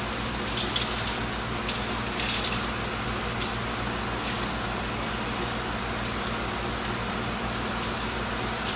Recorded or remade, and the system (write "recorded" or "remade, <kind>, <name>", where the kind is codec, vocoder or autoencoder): recorded